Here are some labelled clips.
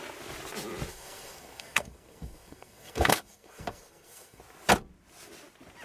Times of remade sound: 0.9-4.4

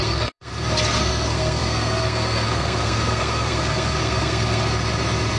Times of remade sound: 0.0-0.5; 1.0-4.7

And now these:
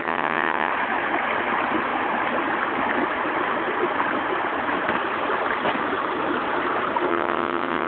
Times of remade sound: 0.0-0.7; 7.1-7.9

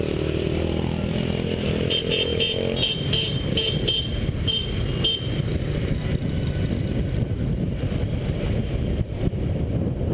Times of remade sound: none